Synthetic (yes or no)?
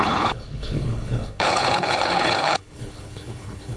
yes